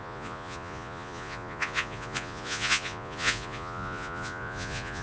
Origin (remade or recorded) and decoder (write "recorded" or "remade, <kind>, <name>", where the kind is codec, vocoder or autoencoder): remade, vocoder, Vocos